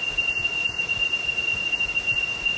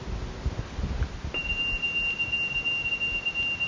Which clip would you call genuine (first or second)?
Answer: second